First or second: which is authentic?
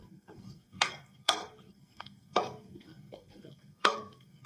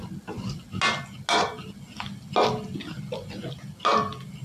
second